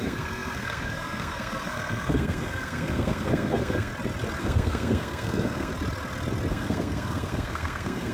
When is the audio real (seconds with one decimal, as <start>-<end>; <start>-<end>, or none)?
3.9-4.4; 5.7-6.5